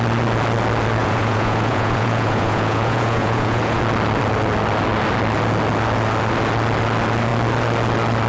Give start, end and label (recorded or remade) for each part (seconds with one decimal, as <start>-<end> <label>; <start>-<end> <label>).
0.0-1.0 recorded; 1.0-3.8 remade; 3.8-8.3 recorded